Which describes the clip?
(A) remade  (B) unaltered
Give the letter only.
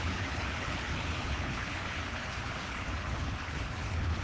A